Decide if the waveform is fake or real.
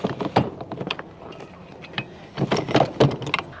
real